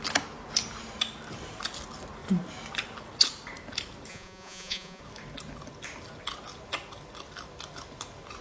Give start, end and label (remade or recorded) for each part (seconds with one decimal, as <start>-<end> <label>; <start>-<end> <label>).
0.0-4.1 recorded; 4.1-5.0 remade; 5.0-8.4 recorded